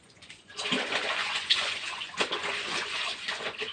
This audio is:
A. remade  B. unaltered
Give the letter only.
A